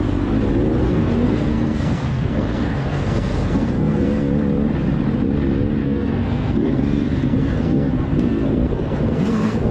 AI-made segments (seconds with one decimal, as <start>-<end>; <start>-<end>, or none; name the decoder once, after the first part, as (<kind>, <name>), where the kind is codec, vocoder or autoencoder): 0.8-4.3 (codec, SNAC); 5.8-9.7